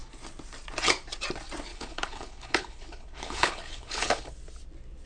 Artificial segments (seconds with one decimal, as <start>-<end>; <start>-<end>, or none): 1.7-4.3